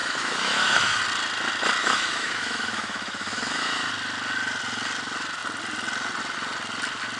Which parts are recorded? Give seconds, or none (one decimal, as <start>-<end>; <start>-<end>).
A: 1.0-1.8; 3.9-7.2